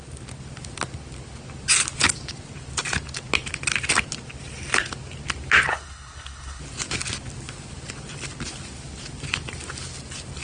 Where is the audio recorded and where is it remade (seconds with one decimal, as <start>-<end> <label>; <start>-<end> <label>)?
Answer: 0.0-5.7 recorded; 5.7-6.6 remade; 6.6-10.4 recorded